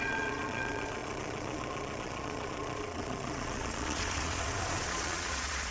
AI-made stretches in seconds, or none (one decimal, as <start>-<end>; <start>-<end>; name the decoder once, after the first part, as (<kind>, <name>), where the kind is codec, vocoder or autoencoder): 0.0-5.7 (vocoder, Vocos)